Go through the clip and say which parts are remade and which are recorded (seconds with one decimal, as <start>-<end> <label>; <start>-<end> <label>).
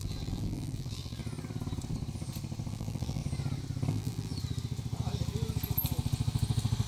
0.0-1.2 remade; 1.2-2.7 recorded; 2.7-3.2 remade; 3.2-3.9 recorded; 3.9-4.3 remade; 4.3-6.9 recorded